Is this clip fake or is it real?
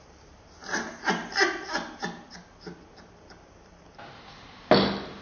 real